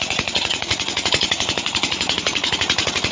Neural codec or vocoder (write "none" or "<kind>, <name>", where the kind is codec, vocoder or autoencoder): vocoder, Vocos